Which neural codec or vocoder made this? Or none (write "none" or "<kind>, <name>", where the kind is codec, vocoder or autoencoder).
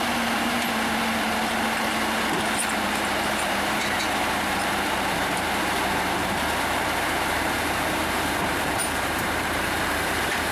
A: vocoder, BigVGAN v2